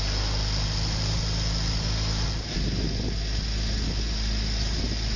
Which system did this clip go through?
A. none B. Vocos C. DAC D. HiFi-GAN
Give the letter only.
A